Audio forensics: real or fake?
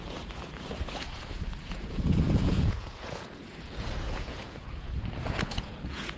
fake